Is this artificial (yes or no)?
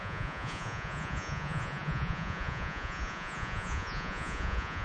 yes